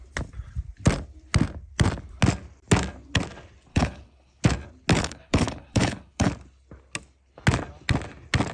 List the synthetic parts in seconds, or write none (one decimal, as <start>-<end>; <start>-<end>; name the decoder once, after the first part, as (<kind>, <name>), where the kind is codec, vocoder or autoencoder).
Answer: 3.7-4.4 (codec, HILCodec); 4.9-6.3